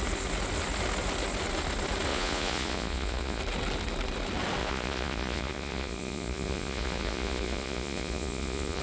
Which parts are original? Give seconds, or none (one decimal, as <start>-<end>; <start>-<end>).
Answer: 0.0-2.1; 3.4-4.6